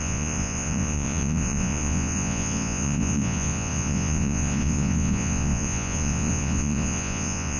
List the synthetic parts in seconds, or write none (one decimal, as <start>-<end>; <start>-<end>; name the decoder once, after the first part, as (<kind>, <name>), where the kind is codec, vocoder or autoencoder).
0.0-7.6 (vocoder, Vocos)